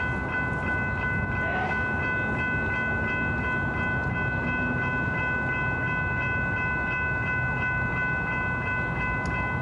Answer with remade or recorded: recorded